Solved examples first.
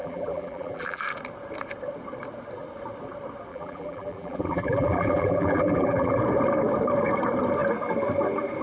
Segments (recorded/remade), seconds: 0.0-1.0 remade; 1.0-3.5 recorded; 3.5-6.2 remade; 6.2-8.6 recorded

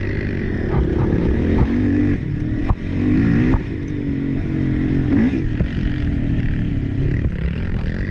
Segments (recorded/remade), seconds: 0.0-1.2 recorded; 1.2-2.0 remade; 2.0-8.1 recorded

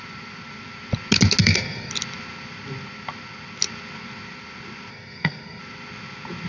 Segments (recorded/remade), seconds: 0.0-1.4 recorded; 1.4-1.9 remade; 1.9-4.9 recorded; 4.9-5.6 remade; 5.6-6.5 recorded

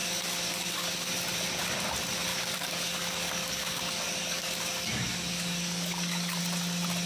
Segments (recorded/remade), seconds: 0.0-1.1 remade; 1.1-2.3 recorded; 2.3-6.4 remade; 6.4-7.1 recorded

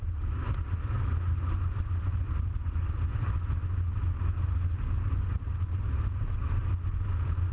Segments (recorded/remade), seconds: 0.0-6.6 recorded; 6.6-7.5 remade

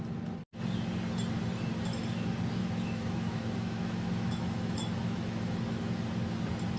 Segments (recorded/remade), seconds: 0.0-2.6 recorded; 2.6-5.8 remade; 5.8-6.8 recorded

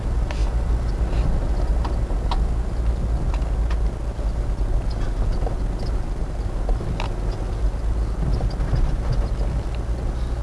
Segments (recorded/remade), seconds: 0.0-5.3 recorded; 5.3-6.4 remade; 6.4-10.4 recorded